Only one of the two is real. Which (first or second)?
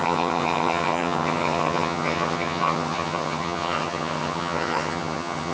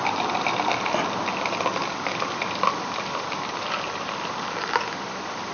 second